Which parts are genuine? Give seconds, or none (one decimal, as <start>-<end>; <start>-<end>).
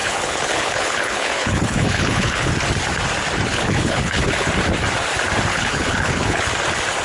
2.5-3.5; 4.5-5.5; 6.5-7.0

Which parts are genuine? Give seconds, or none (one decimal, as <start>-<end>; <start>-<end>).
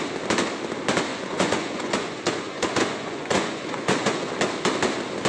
0.0-1.1; 4.3-5.3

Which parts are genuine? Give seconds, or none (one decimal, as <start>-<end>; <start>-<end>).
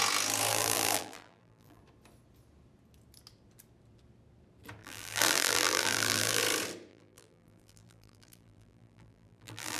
0.0-0.5; 1.8-4.8; 6.4-6.9